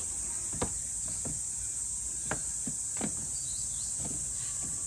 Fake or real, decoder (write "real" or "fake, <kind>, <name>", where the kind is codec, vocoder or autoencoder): real